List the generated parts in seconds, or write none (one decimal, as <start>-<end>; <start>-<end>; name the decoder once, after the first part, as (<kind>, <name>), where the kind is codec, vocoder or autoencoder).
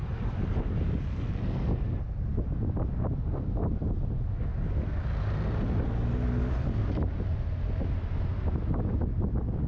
none